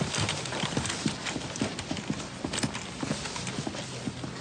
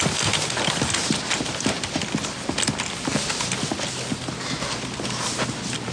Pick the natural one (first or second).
second